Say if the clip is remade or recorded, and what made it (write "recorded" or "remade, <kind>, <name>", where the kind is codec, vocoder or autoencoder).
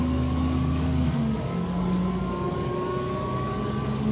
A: remade, codec, DAC